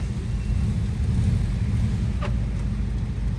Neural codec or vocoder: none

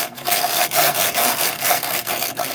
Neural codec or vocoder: codec, SNAC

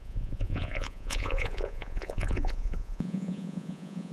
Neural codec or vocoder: vocoder, Vocos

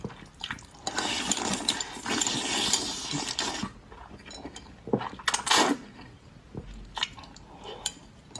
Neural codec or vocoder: none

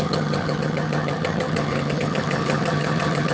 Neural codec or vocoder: vocoder, HiFi-GAN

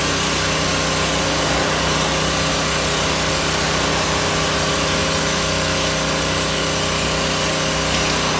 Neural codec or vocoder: none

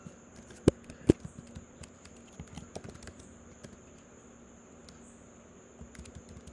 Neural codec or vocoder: none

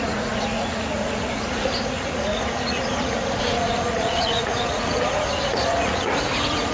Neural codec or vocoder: vocoder, Vocos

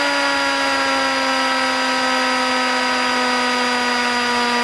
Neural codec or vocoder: none